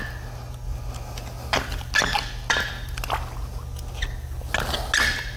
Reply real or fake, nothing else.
real